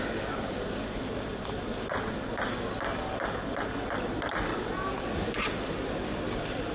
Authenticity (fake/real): real